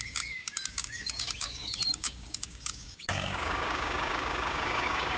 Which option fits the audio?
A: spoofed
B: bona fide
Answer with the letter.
A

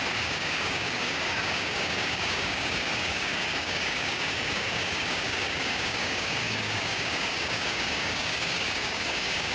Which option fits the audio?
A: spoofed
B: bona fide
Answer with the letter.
A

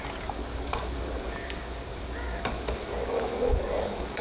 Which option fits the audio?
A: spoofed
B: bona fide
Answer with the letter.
A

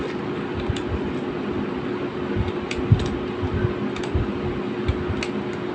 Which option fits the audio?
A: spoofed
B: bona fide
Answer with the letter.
B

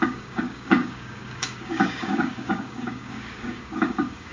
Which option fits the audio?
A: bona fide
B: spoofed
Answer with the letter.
B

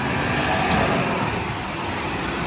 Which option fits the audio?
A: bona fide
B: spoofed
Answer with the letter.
A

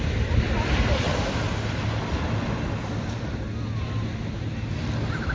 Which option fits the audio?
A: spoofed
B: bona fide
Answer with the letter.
B